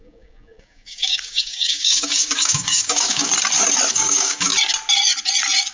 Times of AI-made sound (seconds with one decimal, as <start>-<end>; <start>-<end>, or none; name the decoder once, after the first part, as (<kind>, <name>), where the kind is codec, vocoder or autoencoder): 0.0-3.3 (codec, DAC); 3.9-4.5